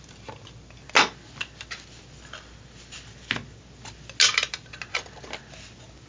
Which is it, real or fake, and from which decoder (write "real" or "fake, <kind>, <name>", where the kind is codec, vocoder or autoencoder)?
real